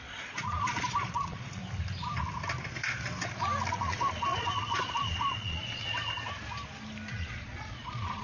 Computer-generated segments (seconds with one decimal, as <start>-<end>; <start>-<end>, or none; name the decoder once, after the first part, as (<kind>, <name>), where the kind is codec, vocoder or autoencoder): 0.0-1.6 (vocoder, Vocos); 3.7-5.8; 7.1-8.2

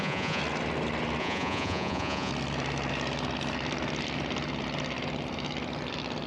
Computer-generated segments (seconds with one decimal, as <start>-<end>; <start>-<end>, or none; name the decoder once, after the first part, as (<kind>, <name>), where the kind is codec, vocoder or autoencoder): 0.0-0.4 (vocoder, Vocos); 1.2-2.3

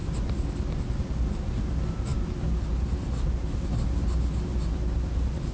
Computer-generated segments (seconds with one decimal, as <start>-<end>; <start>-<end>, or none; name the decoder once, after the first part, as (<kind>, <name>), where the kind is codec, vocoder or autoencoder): none

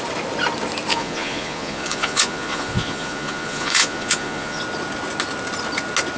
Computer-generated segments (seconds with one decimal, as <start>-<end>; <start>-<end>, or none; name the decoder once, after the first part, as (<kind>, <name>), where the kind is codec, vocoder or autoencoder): 0.9-4.6 (vocoder, Vocos)

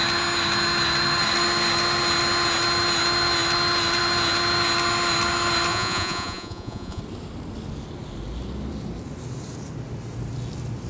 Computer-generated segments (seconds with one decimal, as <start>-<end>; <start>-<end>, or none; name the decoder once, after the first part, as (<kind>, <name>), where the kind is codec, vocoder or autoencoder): 5.7-7.0 (vocoder, Vocos)

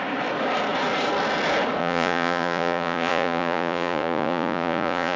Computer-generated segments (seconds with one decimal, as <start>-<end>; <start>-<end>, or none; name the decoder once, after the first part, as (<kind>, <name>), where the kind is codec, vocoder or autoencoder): 1.8-5.2 (vocoder, Vocos)

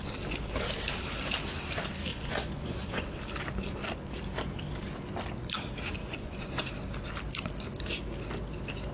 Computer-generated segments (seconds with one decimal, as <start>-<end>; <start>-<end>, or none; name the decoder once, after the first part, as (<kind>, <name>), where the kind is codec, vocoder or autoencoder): 2.1-3.1 (vocoder, Vocos); 6.0-6.5

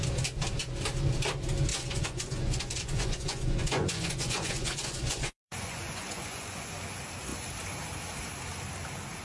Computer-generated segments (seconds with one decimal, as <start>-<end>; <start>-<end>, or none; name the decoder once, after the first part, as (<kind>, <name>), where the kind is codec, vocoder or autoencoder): 1.7-6.7 (vocoder, Vocos)